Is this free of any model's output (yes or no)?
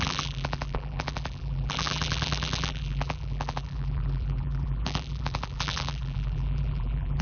no